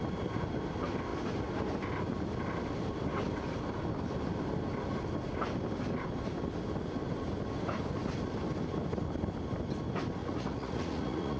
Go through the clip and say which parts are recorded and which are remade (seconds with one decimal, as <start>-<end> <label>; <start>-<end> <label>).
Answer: 0.0-10.2 recorded; 10.2-11.4 remade